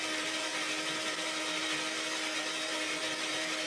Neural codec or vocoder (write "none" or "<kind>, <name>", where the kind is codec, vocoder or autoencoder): none